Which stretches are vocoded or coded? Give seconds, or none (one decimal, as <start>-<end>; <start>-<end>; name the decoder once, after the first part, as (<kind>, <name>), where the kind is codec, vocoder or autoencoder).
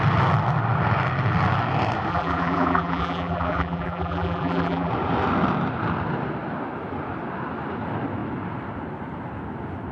2.1-4.9 (vocoder, BigVGAN v2)